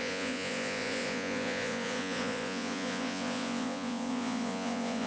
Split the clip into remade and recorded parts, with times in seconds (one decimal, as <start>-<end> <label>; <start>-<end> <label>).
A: 0.0-5.1 remade